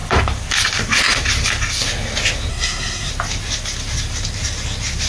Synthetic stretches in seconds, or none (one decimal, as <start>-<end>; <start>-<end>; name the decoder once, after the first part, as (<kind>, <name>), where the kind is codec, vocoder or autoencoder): 2.5-3.1 (codec, SNAC)